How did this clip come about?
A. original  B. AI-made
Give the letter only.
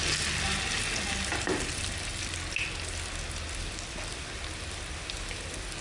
A